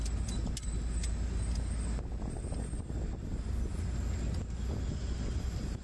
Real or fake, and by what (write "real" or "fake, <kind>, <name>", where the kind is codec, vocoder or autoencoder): real